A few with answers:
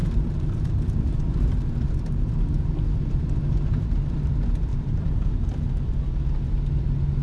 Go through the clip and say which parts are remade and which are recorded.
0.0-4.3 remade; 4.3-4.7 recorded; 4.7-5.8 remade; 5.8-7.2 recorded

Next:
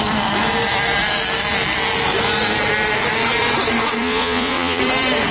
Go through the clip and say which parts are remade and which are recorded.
0.0-4.0 recorded; 4.0-4.8 remade; 4.8-5.3 recorded